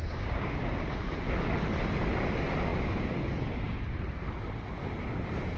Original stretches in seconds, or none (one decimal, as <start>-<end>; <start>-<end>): 0.8-5.6